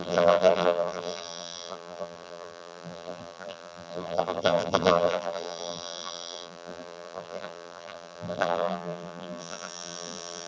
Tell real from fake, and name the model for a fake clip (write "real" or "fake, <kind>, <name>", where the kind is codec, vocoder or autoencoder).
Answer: fake, vocoder, BigVGAN v2